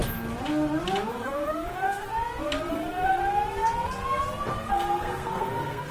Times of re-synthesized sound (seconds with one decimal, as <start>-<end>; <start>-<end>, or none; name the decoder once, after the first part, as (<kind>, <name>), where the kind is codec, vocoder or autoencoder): 1.1-2.1 (codec, SNAC); 2.7-3.2; 4.7-5.9